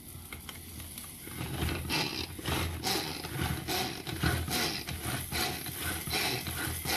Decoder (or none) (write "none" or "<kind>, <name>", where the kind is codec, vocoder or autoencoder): none